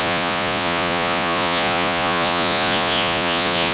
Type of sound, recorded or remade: remade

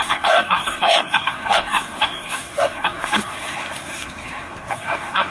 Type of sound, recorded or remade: remade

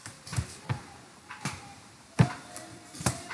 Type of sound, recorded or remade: remade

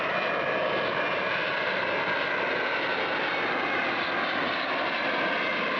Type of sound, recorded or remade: recorded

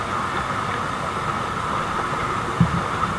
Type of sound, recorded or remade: recorded